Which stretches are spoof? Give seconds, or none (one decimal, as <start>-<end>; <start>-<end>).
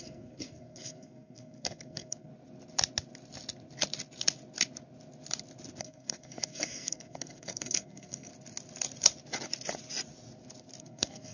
0.0-2.3; 5.8-8.3; 10.8-11.3